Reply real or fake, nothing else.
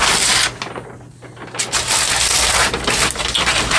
real